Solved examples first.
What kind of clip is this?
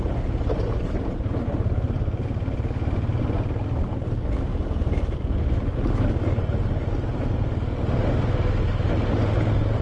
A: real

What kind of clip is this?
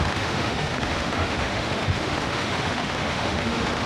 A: fake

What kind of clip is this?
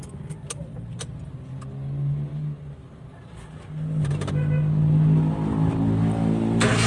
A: real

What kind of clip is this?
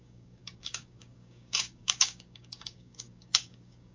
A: fake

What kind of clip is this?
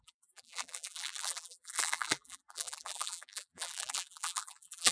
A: fake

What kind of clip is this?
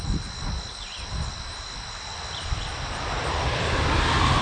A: real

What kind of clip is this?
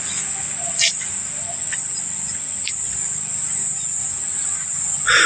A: real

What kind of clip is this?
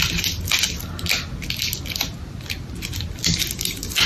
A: real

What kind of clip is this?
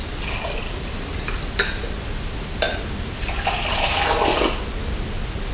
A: real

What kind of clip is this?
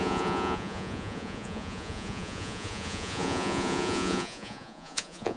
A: fake